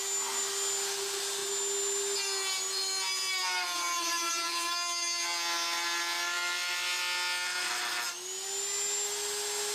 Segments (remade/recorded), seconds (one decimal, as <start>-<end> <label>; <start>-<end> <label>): 0.0-9.7 recorded